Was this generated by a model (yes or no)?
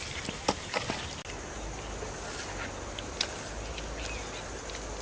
no